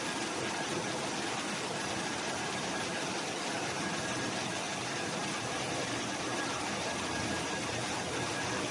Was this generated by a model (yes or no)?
yes